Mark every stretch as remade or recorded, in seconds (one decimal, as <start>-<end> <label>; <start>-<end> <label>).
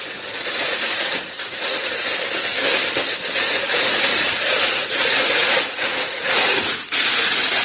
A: 0.0-2.1 remade; 2.1-3.4 recorded; 3.4-7.6 remade